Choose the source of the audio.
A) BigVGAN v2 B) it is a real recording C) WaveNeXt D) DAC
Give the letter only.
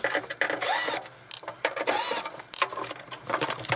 B